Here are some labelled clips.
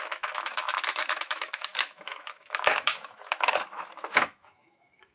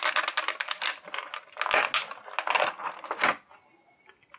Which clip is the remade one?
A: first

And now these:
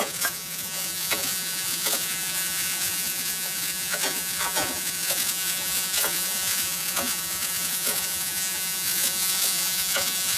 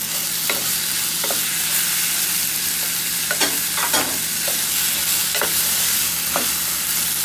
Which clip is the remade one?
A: first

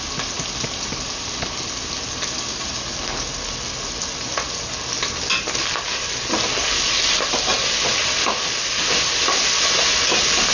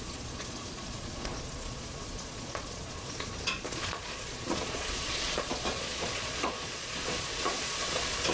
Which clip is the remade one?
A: second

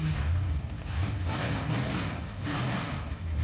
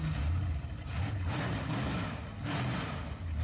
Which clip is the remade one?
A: first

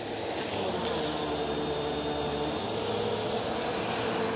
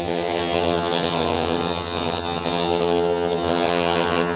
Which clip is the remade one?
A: second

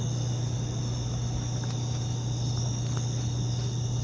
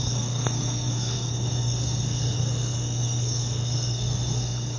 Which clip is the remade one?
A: second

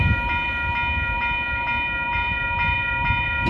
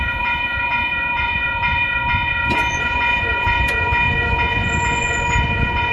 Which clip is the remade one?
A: second